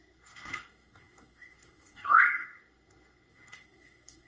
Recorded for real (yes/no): no